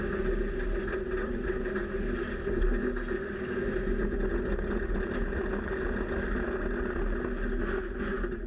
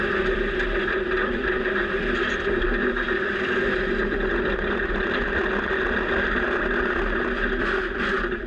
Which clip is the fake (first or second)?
second